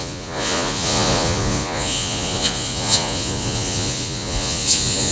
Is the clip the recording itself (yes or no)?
no